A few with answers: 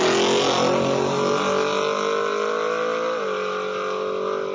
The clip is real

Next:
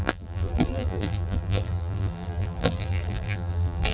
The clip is fake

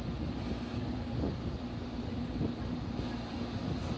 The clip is real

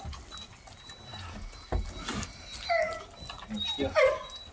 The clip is real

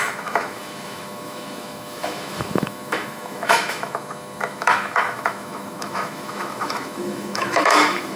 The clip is fake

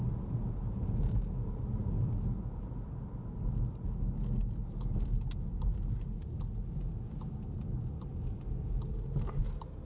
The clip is real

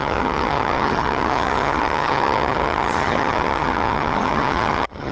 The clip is fake